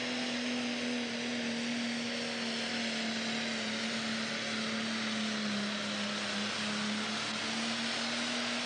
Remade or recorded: recorded